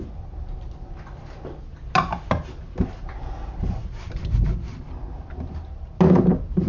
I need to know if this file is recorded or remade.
recorded